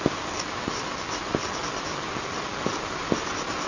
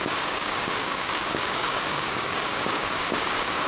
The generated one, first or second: second